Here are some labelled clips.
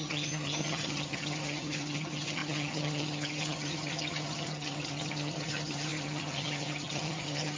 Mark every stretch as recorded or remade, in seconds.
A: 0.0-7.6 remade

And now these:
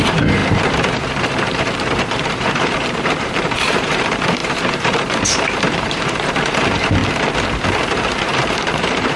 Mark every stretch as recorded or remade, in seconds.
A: 0.0-7.0 remade; 7.0-7.9 recorded; 7.9-9.2 remade

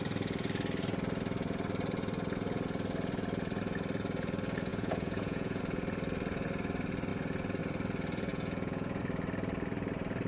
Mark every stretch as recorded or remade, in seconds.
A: 0.0-4.7 recorded; 4.7-5.6 remade; 5.6-8.3 recorded; 8.3-9.0 remade; 9.0-10.3 recorded

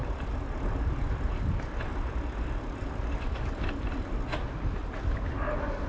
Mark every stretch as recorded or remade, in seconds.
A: 0.0-5.9 recorded

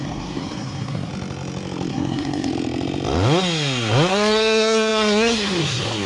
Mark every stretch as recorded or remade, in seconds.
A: 0.0-1.1 remade; 1.1-1.9 recorded; 1.9-2.5 remade; 2.5-4.1 recorded; 4.1-6.1 remade